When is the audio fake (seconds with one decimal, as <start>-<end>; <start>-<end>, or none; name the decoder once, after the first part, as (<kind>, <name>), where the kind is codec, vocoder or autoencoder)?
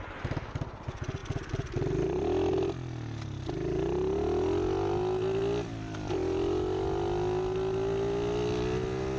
none